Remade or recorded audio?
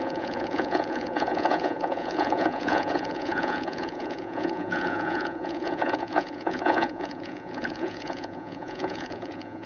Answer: remade